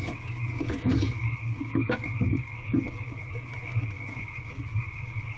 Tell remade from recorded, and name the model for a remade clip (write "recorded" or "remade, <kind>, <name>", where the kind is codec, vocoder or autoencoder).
remade, codec, DAC